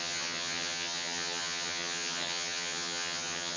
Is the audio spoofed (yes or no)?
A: yes